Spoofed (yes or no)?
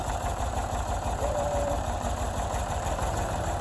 yes